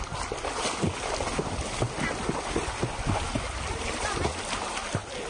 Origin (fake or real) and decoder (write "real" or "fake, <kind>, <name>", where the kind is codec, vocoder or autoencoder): real